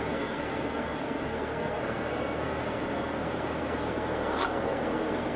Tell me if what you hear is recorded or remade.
remade